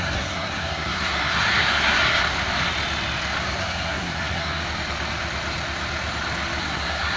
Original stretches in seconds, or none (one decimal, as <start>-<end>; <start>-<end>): 2.2-3.6; 4.6-6.6